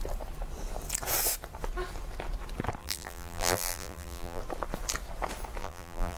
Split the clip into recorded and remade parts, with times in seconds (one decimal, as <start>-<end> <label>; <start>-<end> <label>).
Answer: 0.0-2.8 recorded; 2.8-4.4 remade; 4.4-5.6 recorded; 5.6-6.2 remade